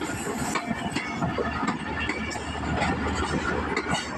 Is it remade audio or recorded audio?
recorded